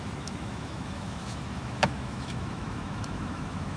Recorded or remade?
remade